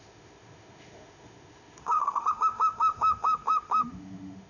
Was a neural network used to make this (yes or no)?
yes